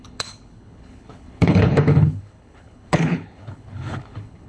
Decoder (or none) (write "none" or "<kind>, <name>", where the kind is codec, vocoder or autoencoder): codec, HILCodec